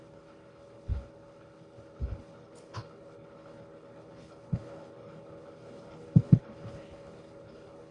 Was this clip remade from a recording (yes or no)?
yes